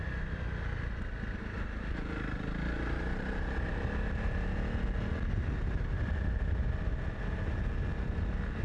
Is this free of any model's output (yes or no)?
yes